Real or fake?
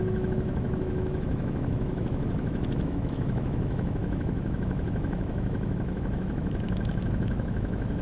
fake